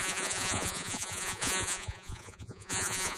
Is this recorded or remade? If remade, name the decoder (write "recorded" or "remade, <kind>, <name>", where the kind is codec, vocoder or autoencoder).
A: remade, vocoder, Vocos